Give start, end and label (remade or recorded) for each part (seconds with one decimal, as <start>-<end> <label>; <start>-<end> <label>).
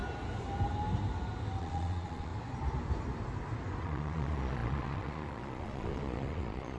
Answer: 0.0-1.6 recorded; 1.6-2.3 remade; 2.3-3.8 recorded; 3.8-6.8 remade